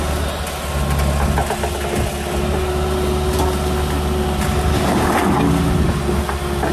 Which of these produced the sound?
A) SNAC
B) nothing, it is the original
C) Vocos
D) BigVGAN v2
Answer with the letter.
B